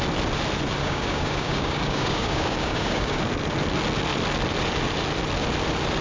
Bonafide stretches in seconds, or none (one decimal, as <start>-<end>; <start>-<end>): 0.0-0.8; 3.2-6.0